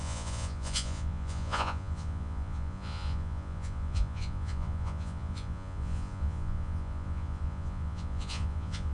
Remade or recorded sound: remade